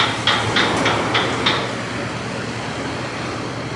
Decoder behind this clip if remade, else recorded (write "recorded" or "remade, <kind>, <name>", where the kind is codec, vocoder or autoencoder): recorded